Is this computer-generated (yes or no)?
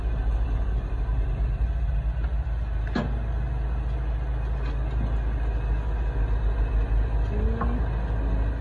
no